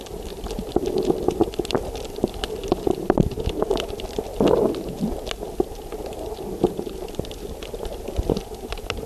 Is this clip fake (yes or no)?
no